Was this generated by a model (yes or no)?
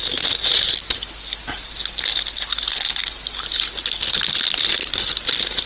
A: no